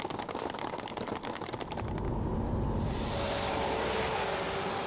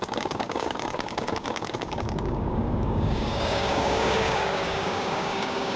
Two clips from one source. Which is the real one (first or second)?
first